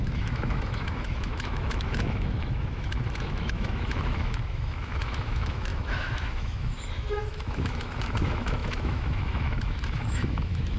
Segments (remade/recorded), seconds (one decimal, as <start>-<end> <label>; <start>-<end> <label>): 0.0-10.8 remade